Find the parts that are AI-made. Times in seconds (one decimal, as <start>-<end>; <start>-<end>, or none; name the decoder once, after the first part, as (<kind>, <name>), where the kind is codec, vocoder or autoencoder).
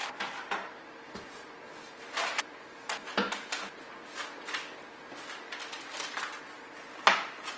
0.0-2.4 (vocoder, BigVGAN v2)